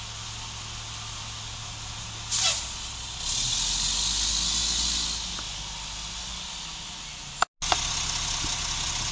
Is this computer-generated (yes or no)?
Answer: no